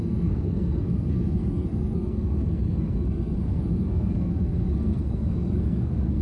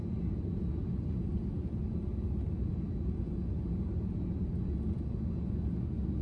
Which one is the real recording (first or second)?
second